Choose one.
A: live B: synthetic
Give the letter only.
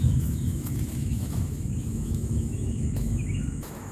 B